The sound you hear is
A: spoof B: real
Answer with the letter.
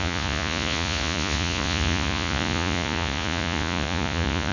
A